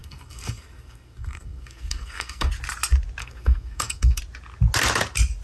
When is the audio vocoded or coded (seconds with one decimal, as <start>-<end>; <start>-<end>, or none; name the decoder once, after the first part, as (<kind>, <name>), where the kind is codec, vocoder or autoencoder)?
0.0-2.5 (codec, SNAC); 3.2-4.2